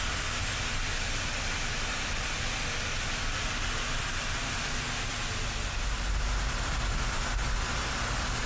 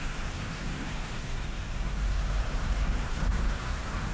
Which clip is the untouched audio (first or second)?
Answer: first